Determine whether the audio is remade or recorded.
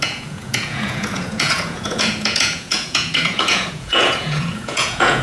remade